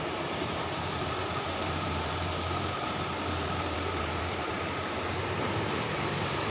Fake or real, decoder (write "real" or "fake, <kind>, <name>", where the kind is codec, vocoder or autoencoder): fake, vocoder, BigVGAN v2